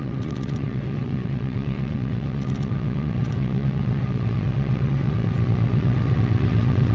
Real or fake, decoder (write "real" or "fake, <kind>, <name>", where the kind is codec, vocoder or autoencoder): fake, vocoder, WaveNeXt